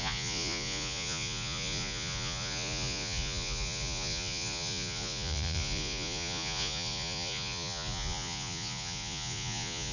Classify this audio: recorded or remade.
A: remade